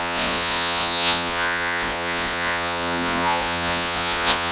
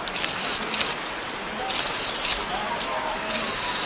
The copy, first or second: first